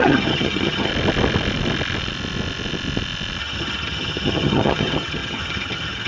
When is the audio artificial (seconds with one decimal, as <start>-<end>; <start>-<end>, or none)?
0.0-0.9; 3.4-6.1